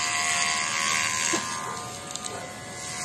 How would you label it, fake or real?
real